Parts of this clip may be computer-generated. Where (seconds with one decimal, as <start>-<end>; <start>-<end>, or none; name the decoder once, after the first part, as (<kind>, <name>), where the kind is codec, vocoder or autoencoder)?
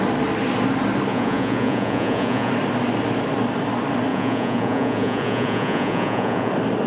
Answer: 1.1-2.5 (vocoder, Vocos); 4.1-6.5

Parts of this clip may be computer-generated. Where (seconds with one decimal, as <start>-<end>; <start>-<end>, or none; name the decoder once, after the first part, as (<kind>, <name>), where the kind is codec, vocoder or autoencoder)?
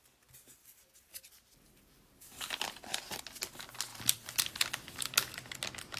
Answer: 0.6-3.2 (vocoder, BigVGAN v2); 3.9-4.5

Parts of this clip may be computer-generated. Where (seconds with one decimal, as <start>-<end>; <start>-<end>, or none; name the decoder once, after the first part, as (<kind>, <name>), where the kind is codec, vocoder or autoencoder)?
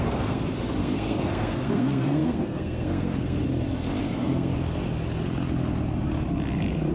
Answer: 0.0-3.4 (codec, SNAC); 4.0-4.5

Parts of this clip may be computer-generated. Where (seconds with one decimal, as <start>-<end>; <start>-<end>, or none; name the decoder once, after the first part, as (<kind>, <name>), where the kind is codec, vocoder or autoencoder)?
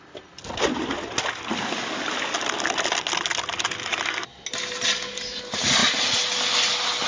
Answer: none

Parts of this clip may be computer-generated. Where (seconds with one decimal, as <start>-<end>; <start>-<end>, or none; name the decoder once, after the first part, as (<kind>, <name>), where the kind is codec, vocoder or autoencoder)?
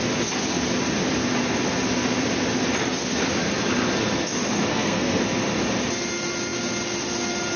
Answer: 4.7-5.2 (codec, SNAC)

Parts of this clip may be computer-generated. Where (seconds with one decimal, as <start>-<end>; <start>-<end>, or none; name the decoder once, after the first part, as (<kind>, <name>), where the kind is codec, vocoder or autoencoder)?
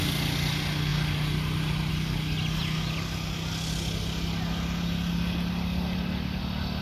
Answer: none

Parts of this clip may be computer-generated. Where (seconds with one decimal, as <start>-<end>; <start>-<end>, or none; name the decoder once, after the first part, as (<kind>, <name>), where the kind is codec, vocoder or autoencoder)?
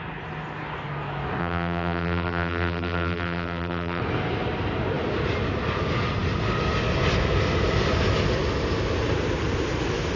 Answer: 1.4-4.0 (vocoder, BigVGAN v2)